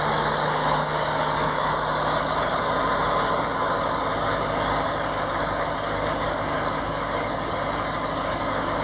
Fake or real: fake